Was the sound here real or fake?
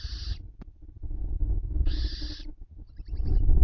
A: real